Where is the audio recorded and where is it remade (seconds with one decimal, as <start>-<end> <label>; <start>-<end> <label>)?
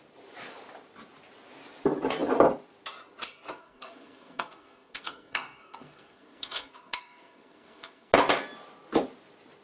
0.0-3.6 recorded; 3.6-8.1 remade; 8.1-9.6 recorded